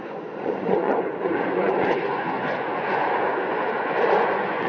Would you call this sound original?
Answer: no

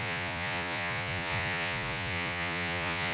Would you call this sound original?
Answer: no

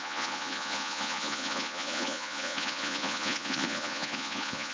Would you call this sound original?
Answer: no